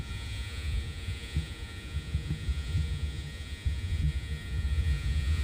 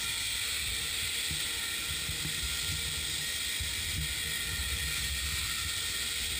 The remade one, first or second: first